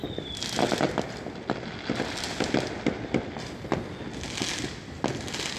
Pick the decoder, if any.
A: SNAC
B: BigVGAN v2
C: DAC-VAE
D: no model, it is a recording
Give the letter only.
D